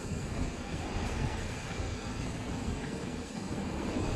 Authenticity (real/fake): fake